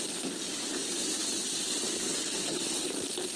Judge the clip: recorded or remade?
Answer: recorded